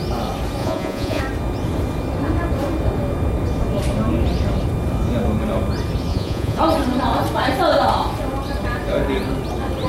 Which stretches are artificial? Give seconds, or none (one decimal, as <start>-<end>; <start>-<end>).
0.6-1.2; 6.1-6.6